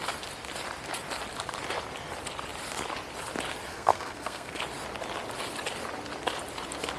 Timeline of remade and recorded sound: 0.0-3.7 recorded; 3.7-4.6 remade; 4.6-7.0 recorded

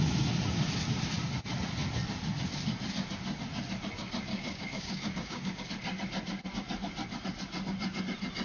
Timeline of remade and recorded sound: 0.0-4.3 recorded; 4.3-5.6 remade; 5.6-8.4 recorded

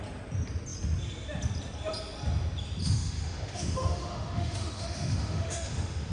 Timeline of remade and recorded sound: 0.0-2.8 recorded; 2.8-6.1 remade

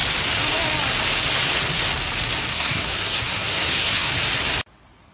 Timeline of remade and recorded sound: 0.0-2.5 recorded; 2.5-4.1 remade; 4.1-5.1 recorded